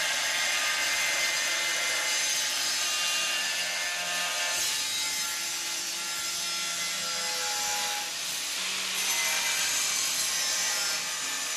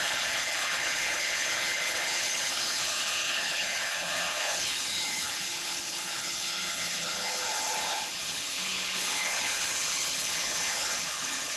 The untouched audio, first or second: first